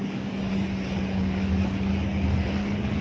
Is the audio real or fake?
fake